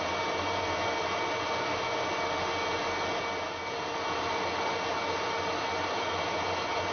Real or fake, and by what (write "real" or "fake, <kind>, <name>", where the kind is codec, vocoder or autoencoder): real